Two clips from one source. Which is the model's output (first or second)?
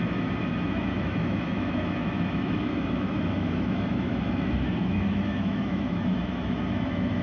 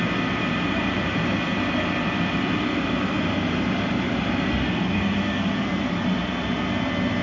first